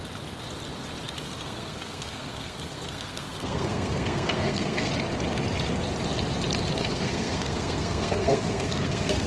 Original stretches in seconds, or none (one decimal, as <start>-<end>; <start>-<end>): 0.0-1.2; 4.9-6.8